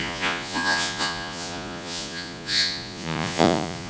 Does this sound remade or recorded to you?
remade